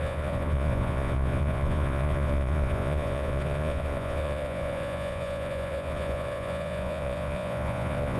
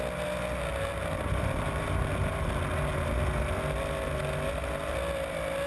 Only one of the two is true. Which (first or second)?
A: second